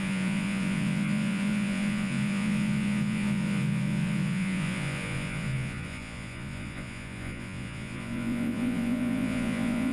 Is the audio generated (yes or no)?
yes